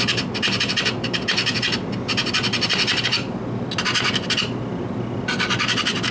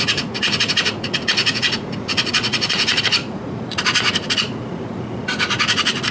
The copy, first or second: second